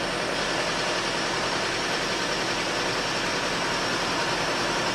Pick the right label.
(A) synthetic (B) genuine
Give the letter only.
B